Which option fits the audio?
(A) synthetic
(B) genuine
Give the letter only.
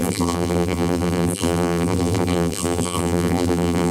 A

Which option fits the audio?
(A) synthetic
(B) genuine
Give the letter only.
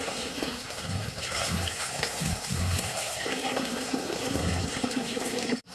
A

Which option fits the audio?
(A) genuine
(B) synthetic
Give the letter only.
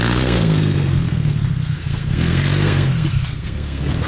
B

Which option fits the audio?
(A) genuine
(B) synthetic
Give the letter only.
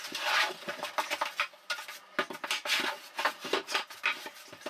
A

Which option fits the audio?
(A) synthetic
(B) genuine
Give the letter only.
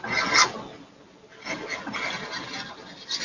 B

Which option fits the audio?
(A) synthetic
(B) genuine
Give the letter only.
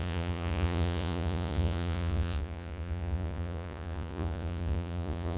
A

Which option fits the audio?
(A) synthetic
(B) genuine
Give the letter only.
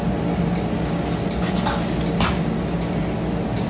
B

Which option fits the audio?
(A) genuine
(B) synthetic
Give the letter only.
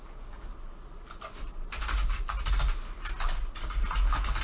A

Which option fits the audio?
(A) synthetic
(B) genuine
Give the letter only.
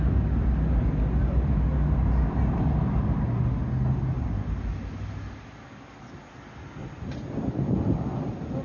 B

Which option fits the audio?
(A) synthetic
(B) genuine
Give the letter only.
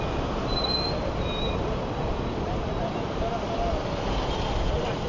B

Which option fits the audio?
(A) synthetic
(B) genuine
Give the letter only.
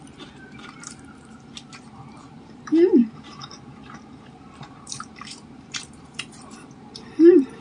A